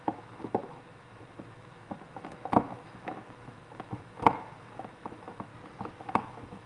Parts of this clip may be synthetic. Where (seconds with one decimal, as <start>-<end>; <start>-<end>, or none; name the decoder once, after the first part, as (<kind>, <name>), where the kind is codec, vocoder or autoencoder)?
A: 0.0-5.5 (autoencoder, DAC-VAE); 6.0-6.7